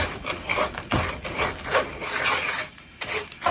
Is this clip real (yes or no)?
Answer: yes